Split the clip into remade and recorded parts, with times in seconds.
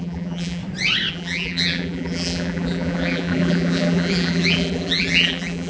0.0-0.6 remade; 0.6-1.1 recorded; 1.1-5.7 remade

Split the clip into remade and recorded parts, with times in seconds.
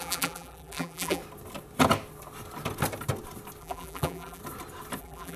0.0-1.2 remade; 1.2-3.6 recorded; 3.6-4.4 remade; 4.4-5.0 recorded; 5.0-5.4 remade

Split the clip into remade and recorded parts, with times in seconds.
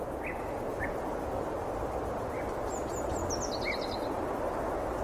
0.0-0.7 recorded; 0.7-2.5 remade; 2.5-5.0 recorded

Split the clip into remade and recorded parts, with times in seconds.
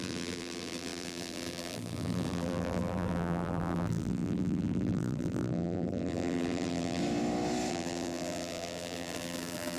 0.0-7.0 remade; 7.0-7.7 recorded; 7.7-9.8 remade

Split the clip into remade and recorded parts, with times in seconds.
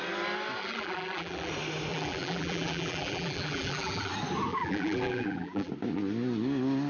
0.0-0.6 recorded; 0.6-1.5 remade; 1.5-1.9 recorded; 1.9-4.1 remade; 4.1-4.5 recorded; 4.5-5.7 remade; 5.7-6.9 recorded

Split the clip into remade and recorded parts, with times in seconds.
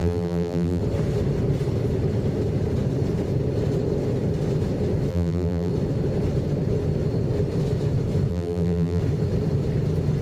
0.0-0.8 remade; 0.8-5.1 recorded; 5.1-5.7 remade; 5.7-8.3 recorded; 8.3-9.0 remade; 9.0-10.2 recorded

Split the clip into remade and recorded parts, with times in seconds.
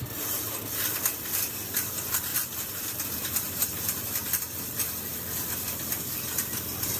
0.0-7.0 recorded